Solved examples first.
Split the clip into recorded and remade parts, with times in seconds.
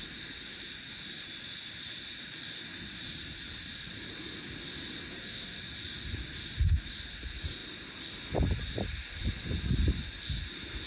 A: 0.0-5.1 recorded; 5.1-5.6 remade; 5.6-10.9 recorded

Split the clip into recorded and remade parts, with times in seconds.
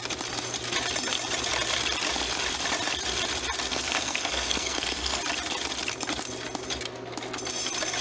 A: 0.0-3.7 recorded; 3.7-5.2 remade; 5.2-8.0 recorded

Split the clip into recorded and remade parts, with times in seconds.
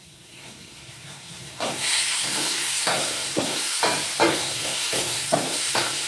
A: 0.0-3.8 remade; 3.8-4.3 recorded; 4.3-6.1 remade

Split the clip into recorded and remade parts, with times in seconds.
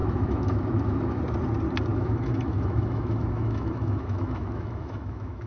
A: 0.0-1.2 remade; 1.2-1.9 recorded; 1.9-5.5 remade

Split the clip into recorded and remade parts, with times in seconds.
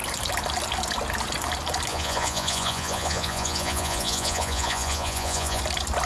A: 0.0-1.9 recorded; 1.9-5.6 remade; 5.6-6.1 recorded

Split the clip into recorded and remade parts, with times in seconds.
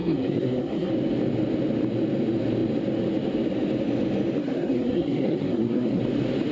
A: 0.0-0.9 remade; 0.9-4.4 recorded; 4.4-6.0 remade; 6.0-6.5 recorded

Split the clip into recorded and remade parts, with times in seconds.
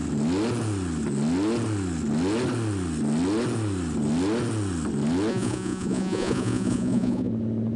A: 0.0-5.3 recorded; 5.3-7.3 remade; 7.3-7.8 recorded